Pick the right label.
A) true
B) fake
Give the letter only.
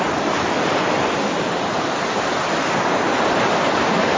A